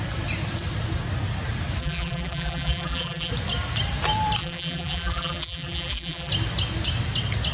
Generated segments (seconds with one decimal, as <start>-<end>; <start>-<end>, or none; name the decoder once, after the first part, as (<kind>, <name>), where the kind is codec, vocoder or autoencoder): 1.8-3.3 (vocoder, BigVGAN v2); 4.4-6.3